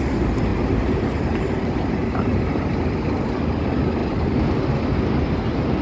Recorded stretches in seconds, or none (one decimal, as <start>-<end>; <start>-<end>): 0.0-0.5; 2.4-5.8